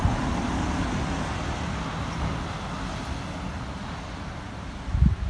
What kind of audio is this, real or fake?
real